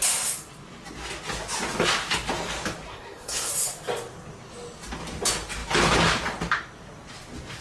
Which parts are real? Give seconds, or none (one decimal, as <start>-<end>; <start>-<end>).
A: 0.0-2.9; 3.5-7.6

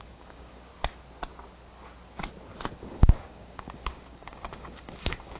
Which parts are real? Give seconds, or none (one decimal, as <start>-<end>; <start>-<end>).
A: 0.7-2.8

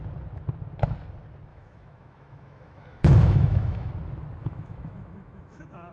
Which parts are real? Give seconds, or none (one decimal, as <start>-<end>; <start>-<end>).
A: 0.0-1.5; 3.9-4.4